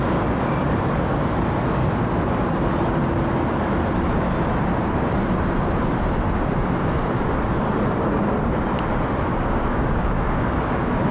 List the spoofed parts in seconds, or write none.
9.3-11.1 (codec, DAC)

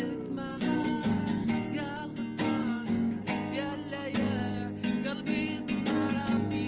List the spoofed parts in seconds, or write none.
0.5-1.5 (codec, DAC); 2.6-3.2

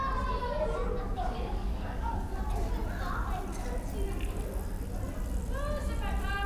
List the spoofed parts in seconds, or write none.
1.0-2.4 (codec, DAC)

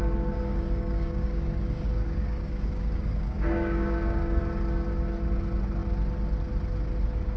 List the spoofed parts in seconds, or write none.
0.0-4.4 (codec, DAC)

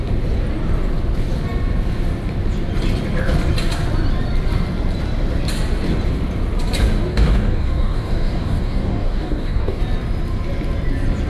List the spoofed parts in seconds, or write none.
7.1-9.8 (codec, DAC)

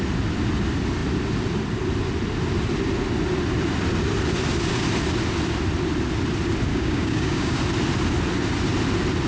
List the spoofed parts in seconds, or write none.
6.7-7.6 (codec, DAC)